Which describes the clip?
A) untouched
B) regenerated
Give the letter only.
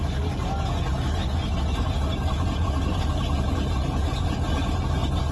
A